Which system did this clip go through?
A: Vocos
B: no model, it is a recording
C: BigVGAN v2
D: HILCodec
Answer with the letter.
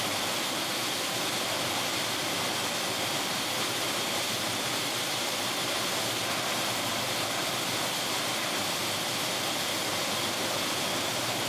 B